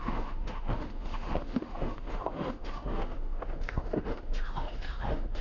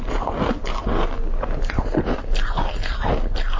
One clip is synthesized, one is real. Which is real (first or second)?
second